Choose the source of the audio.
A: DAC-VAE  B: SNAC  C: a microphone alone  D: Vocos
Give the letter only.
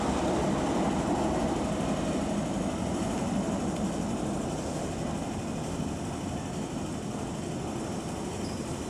C